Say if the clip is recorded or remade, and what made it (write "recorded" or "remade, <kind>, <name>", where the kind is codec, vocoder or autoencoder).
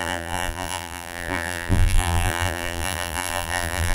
remade, vocoder, BigVGAN v2